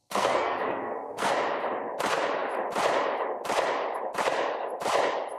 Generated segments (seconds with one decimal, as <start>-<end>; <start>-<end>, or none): 0.0-1.3